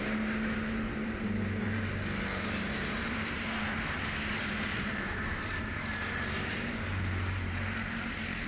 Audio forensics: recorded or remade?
remade